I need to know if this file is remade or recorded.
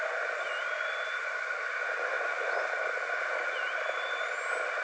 recorded